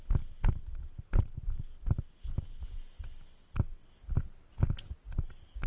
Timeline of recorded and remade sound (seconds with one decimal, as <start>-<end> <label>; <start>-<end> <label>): 0.0-5.7 recorded